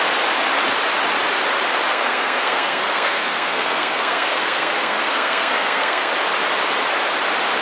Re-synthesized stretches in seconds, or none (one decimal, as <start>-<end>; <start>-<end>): 1.9-6.1